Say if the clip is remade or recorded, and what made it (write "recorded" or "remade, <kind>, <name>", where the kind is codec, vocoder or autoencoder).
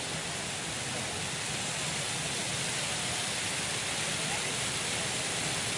recorded